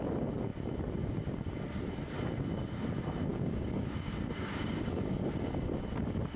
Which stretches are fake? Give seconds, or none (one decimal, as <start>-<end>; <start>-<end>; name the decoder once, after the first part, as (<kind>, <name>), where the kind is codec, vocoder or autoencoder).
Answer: 3.3-5.1 (codec, DAC)